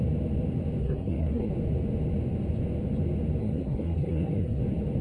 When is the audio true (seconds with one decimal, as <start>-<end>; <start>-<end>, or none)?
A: 0.0-0.8; 1.5-3.4; 4.6-5.0